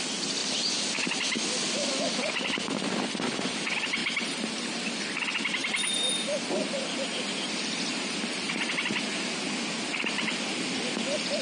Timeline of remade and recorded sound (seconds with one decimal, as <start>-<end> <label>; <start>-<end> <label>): 0.0-4.0 recorded; 4.0-4.5 remade; 4.5-5.6 recorded; 5.6-6.1 remade; 6.1-7.9 recorded; 7.9-8.7 remade; 8.7-11.4 recorded